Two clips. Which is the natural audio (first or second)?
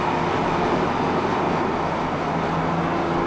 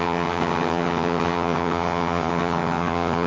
first